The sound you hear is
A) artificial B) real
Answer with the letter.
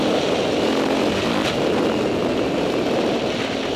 B